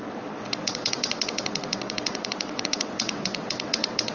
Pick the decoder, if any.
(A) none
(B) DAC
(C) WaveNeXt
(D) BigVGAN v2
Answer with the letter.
C